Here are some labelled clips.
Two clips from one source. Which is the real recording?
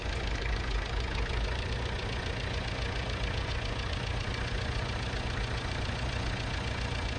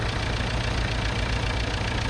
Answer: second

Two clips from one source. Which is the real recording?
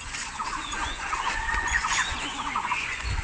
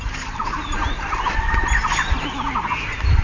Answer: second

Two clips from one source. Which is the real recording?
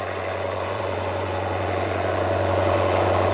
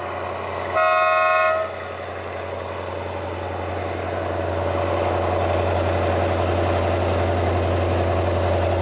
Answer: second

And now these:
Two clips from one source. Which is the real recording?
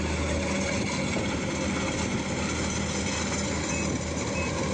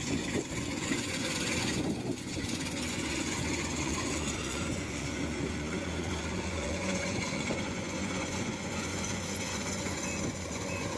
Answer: first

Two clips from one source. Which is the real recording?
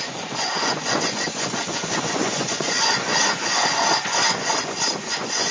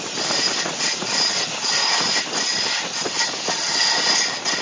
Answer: second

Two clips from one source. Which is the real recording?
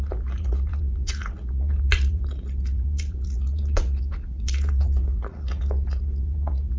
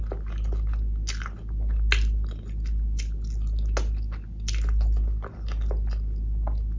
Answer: second